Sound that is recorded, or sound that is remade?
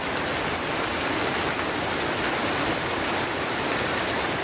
recorded